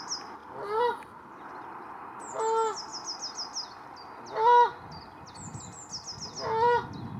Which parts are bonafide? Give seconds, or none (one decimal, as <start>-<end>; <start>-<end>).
0.0-7.2